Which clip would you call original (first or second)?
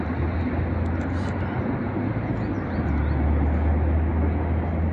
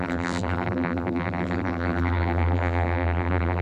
first